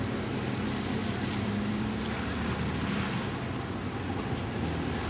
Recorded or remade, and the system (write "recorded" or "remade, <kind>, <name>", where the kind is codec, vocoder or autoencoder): recorded